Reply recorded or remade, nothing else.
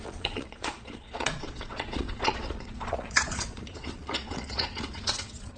remade